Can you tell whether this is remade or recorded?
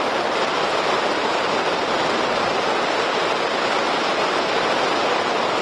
recorded